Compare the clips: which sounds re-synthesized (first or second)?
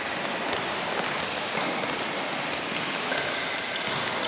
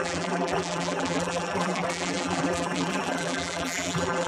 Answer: second